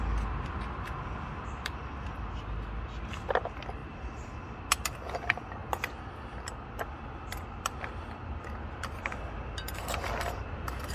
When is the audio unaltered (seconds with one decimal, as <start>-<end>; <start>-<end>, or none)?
0.0-10.9